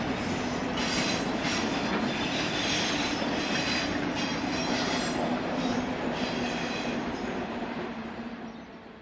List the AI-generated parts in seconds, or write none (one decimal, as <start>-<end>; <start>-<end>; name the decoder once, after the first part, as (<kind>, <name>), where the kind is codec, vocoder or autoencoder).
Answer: 4.3-8.4 (vocoder, BigVGAN v2)

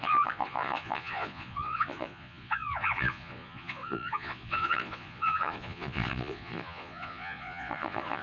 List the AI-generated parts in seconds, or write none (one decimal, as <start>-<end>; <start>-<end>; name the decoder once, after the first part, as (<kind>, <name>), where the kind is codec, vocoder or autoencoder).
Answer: 0.0-8.2 (vocoder, Vocos)

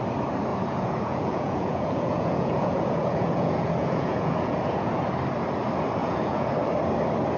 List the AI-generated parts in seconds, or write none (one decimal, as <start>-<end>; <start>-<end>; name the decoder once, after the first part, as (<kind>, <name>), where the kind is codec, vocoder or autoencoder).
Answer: 0.5-4.9 (vocoder, Vocos); 6.0-6.5

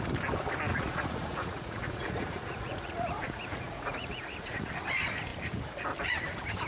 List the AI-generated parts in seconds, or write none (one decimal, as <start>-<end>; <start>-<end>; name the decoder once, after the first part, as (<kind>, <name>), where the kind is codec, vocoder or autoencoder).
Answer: 0.7-4.7 (vocoder, Vocos)

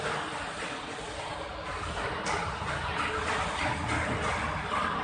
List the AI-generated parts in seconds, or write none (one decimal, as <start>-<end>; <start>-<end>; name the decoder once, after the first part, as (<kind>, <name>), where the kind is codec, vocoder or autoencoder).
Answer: none

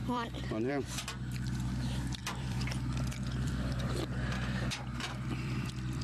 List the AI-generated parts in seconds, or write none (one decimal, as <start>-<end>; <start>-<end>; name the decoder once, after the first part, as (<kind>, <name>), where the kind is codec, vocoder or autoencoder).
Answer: 0.0-0.7 (vocoder, BigVGAN v2); 2.2-6.0

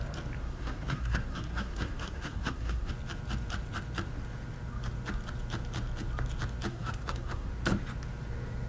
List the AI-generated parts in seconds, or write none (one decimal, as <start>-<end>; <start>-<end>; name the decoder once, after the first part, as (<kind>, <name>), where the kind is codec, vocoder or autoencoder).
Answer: 0.4-2.9 (codec, SNAC); 6.7-7.5